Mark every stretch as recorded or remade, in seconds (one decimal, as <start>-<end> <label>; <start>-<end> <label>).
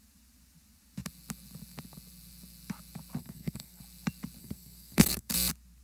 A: 0.0-3.2 recorded; 3.2-3.8 remade; 3.8-4.4 recorded; 4.4-5.3 remade; 5.3-5.8 recorded